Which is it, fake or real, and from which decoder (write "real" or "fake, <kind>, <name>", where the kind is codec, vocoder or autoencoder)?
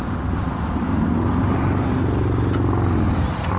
real